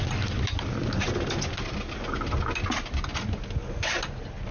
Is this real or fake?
real